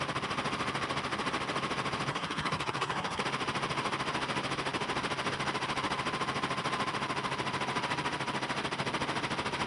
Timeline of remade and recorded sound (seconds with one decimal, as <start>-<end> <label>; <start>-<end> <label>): 0.0-2.1 recorded; 2.1-3.2 remade; 3.2-9.7 recorded